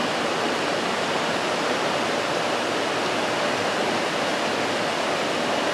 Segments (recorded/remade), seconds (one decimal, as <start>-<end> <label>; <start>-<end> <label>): 0.0-2.4 remade; 2.4-5.7 recorded